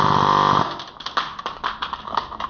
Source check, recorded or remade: recorded